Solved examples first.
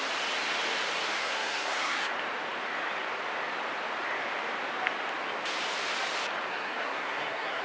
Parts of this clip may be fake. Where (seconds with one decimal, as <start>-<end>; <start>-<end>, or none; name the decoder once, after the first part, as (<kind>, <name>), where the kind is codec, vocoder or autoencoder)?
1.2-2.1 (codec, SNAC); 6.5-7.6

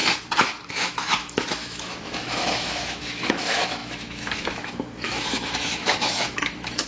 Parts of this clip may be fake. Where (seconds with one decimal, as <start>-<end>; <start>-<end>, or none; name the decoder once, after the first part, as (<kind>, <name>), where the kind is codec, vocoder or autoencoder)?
0.7-6.9 (autoencoder, DAC-VAE)

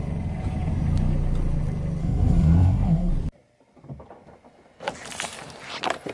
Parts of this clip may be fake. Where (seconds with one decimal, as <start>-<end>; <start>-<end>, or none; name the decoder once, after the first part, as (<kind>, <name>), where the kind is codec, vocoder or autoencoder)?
2.0-3.1 (codec, SNAC)

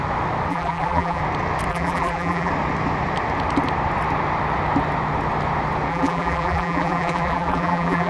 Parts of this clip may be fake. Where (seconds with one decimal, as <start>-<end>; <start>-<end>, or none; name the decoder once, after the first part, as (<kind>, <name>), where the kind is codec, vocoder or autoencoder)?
0.5-1.2 (vocoder, BigVGAN v2); 1.7-2.5; 5.9-8.1

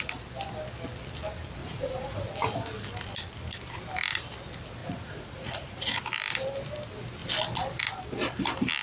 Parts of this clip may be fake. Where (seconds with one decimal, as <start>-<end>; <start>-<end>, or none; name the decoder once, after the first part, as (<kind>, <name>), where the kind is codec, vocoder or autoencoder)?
1.6-2.2 (vocoder, Vocos); 4.8-6.0